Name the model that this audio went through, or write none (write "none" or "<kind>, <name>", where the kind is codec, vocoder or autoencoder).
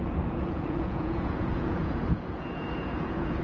vocoder, Vocos